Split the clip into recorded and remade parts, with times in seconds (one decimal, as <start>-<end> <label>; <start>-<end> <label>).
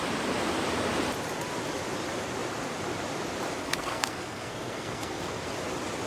0.0-3.6 recorded; 3.6-5.5 remade; 5.5-6.1 recorded